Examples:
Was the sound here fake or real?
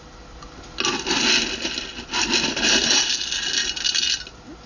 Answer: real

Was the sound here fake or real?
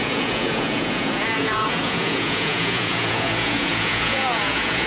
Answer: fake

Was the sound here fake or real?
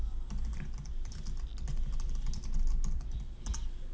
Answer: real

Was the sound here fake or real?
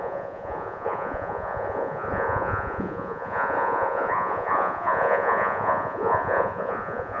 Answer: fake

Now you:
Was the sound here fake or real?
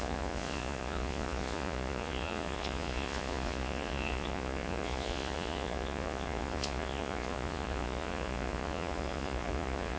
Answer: fake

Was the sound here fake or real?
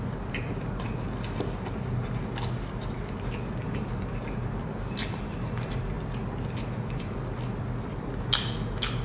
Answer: real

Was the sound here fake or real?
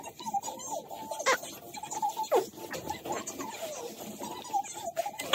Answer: real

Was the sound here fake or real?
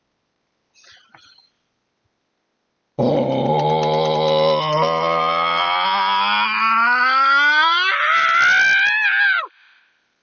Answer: real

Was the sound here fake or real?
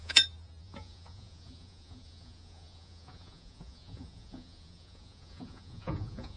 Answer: fake